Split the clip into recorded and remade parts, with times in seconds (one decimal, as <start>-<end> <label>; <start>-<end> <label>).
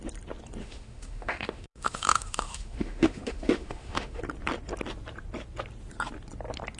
0.0-0.6 recorded; 0.6-4.2 remade; 4.2-6.8 recorded